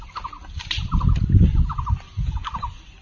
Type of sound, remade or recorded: recorded